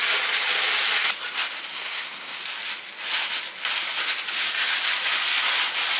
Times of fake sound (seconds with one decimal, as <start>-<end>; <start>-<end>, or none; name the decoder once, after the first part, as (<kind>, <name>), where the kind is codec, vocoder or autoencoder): 1.7-2.4 (codec, SNAC)